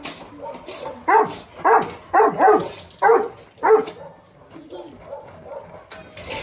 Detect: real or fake real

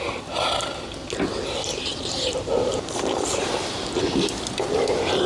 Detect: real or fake real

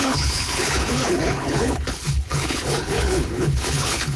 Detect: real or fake fake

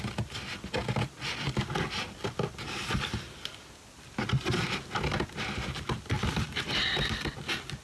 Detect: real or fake real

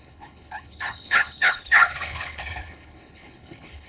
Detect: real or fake fake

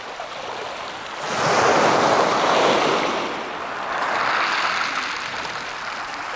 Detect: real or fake real